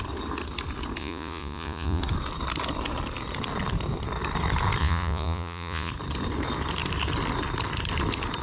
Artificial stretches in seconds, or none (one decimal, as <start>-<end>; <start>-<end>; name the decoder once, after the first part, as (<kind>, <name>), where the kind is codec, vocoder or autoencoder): 1.0-2.0 (vocoder, Vocos); 4.8-5.9

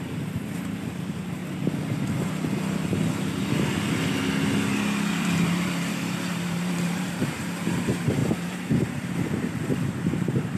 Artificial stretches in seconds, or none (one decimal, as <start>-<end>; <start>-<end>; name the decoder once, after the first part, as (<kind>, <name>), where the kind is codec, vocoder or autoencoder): 0.0-1.4 (vocoder, BigVGAN v2); 5.1-10.6